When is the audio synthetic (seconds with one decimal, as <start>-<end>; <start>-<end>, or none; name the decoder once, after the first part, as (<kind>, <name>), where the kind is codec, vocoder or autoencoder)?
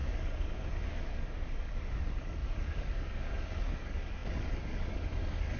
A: 0.0-5.6 (codec, DAC)